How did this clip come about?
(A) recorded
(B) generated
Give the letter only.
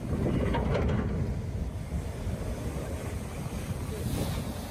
A